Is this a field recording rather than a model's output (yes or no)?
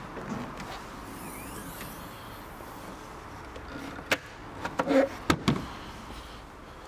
yes